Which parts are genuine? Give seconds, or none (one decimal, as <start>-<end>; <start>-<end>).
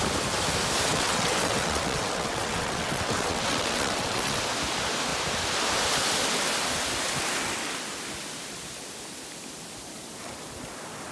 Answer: 0.0-0.9; 4.4-11.1